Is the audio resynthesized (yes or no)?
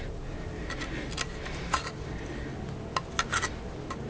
no